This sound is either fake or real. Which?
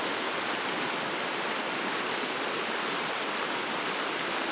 real